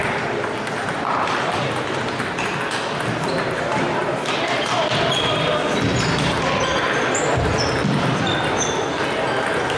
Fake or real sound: real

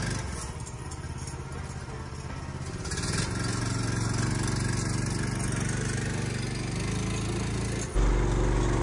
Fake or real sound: real